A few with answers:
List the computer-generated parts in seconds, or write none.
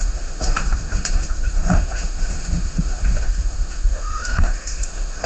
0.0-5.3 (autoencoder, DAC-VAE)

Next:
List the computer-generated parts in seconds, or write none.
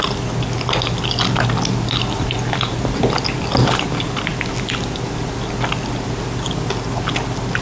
none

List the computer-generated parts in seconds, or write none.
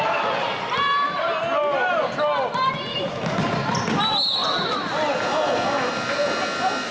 2.9-3.4 (autoencoder, DAC-VAE)